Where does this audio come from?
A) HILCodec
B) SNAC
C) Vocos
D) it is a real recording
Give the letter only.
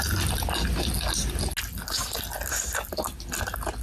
D